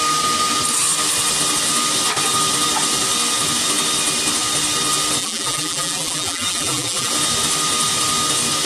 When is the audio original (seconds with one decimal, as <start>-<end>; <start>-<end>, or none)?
0.0-5.2; 7.1-8.7